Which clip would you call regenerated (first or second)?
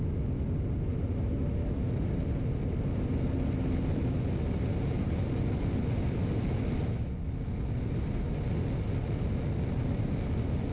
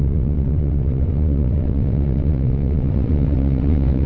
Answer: second